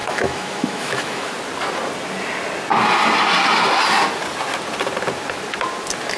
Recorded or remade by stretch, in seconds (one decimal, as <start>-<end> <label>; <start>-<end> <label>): 0.0-1.3 remade; 1.3-6.2 recorded

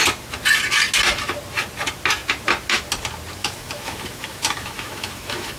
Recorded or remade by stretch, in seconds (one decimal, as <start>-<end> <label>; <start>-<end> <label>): 0.0-3.4 recorded; 3.4-5.6 remade